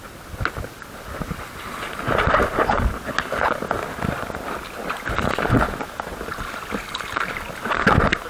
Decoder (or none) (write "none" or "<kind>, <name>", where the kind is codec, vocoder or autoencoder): none